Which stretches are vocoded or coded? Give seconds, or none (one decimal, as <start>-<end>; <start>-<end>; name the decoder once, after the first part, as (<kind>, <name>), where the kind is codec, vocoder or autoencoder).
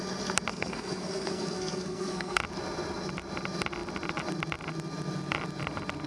0.5-2.4 (codec, SNAC)